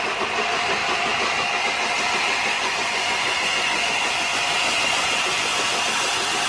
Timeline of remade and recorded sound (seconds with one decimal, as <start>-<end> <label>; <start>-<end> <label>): 0.0-2.5 recorded; 2.5-5.6 remade; 5.6-6.5 recorded